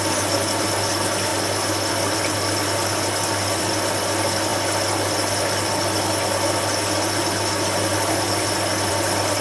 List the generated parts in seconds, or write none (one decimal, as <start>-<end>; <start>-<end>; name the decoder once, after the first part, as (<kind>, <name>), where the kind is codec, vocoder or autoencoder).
none